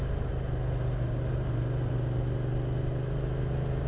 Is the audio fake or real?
real